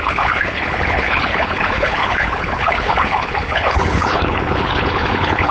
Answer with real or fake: fake